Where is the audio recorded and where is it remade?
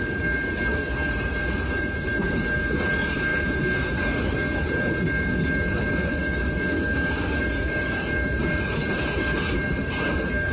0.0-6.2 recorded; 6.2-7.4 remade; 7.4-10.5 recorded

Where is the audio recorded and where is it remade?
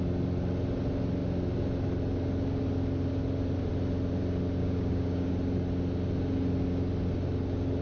0.0-4.6 recorded; 4.6-5.3 remade; 5.3-7.8 recorded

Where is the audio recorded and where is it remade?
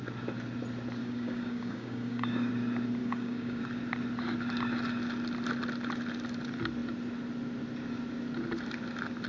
0.0-1.0 recorded; 1.0-2.5 remade; 2.5-3.0 recorded; 3.0-3.6 remade; 3.6-9.3 recorded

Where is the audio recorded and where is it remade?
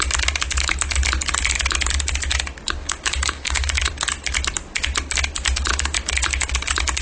0.0-2.8 recorded; 2.8-3.9 remade; 3.9-5.7 recorded; 5.7-6.5 remade; 6.5-7.0 recorded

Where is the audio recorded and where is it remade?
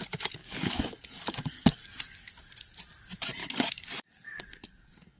0.0-0.4 recorded; 0.4-2.5 remade; 2.5-3.4 recorded; 3.4-5.2 remade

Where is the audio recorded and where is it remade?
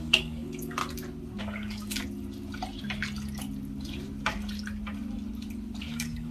0.0-0.8 remade; 0.8-1.4 recorded; 1.4-2.0 remade; 2.0-5.8 recorded; 5.8-6.3 remade